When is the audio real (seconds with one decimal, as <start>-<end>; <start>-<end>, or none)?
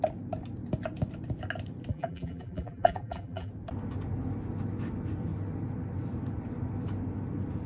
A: 0.0-1.9; 3.5-7.7